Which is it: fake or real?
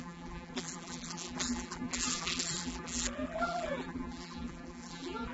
fake